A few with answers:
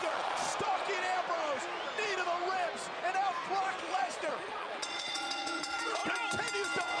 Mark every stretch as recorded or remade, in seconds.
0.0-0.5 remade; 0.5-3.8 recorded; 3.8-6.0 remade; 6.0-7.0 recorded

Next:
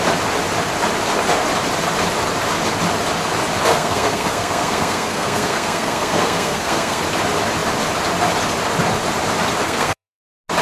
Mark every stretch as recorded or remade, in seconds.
0.0-3.7 recorded; 3.7-7.0 remade; 7.0-9.6 recorded; 9.6-10.2 remade; 10.2-10.6 recorded

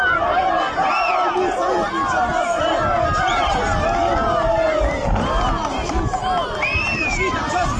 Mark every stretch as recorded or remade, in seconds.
0.0-7.8 recorded